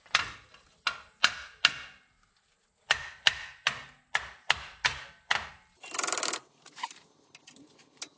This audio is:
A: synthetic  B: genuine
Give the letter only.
B